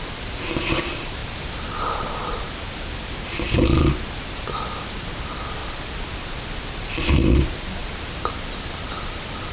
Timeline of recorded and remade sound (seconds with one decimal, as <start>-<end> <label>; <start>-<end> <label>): 0.0-9.5 recorded